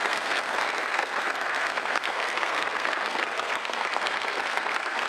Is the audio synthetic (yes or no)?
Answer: yes